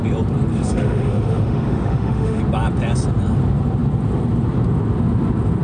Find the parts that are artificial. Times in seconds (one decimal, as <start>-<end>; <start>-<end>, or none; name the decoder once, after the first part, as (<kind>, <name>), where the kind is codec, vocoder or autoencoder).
0.5-2.4 (autoencoder, DAC-VAE)